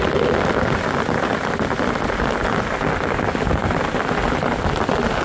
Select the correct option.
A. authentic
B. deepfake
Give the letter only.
A